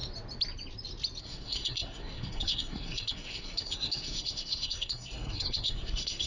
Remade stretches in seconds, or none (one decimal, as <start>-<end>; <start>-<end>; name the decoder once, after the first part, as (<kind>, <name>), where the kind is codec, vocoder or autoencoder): 1.2-6.3 (codec, SNAC)